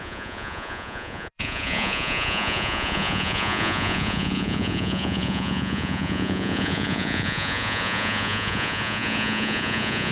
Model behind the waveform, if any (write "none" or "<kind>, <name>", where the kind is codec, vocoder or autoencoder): vocoder, Vocos